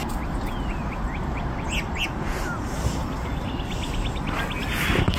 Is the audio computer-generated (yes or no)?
no